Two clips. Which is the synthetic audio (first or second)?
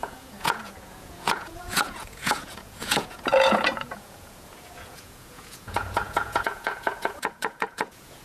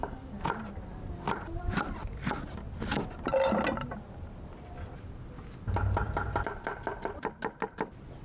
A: first